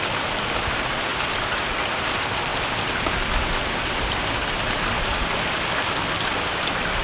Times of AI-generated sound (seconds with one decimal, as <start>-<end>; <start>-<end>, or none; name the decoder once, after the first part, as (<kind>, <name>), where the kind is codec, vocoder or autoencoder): none